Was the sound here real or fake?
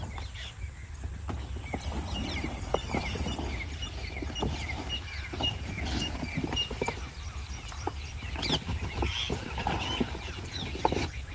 real